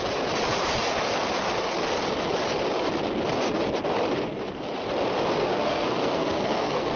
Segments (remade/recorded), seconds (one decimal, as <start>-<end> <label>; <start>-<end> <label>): 0.0-5.4 recorded; 5.4-7.0 remade